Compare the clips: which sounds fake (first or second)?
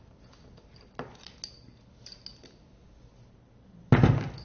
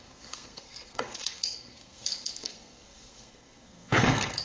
second